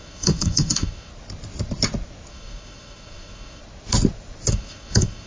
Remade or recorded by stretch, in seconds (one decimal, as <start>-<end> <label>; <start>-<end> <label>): 0.0-1.1 remade; 1.1-2.3 recorded; 2.3-3.6 remade; 3.6-4.5 recorded; 4.5-5.3 remade